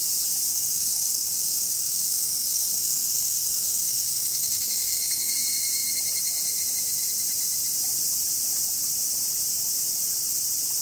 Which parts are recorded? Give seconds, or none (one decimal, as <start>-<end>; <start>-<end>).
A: 0.0-0.5; 5.3-10.8